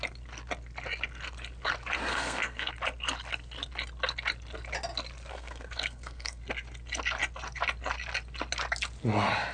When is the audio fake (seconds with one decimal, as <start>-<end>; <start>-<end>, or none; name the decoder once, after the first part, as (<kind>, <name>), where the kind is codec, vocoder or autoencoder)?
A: 2.1-2.7 (codec, SNAC); 5.3-6.4